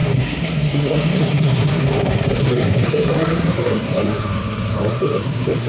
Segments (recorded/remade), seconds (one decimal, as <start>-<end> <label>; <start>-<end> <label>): 0.0-5.7 remade